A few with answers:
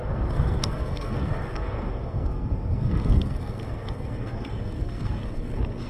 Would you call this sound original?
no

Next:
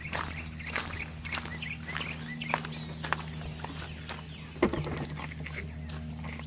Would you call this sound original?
yes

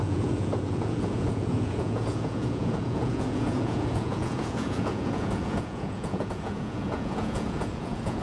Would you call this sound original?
no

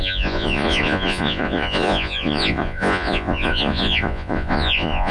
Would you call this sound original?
no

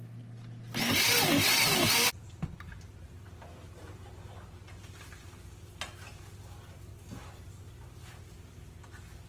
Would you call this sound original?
yes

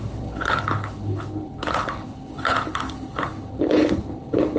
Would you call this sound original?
no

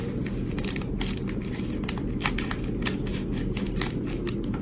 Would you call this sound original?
yes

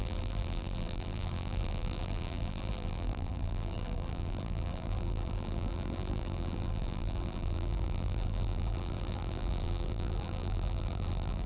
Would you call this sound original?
no